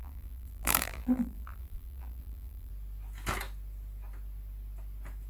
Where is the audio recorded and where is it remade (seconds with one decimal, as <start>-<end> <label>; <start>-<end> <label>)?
0.0-2.7 remade; 2.7-5.3 recorded